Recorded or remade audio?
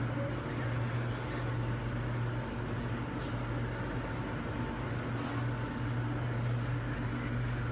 recorded